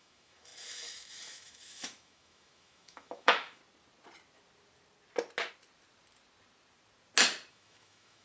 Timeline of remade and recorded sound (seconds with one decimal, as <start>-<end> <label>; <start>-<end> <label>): 0.0-3.6 remade; 3.6-7.5 recorded; 7.5-8.2 remade